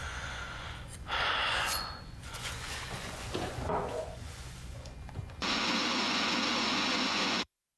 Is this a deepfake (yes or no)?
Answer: yes